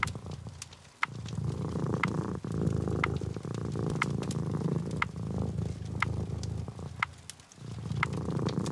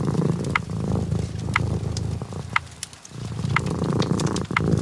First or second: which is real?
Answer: first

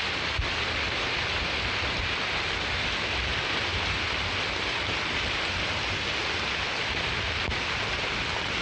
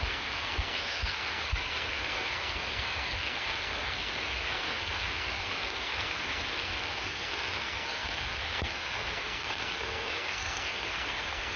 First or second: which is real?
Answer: first